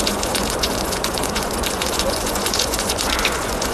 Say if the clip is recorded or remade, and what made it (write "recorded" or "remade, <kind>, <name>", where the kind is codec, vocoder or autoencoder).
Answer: remade, vocoder, Vocos